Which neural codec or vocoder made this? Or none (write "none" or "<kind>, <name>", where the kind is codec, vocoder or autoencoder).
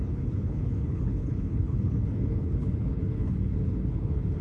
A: codec, HILCodec